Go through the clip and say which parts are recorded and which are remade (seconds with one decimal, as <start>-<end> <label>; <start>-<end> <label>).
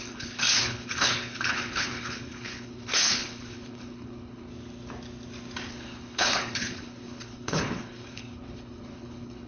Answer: 0.0-4.5 remade; 4.5-5.7 recorded; 5.7-9.5 remade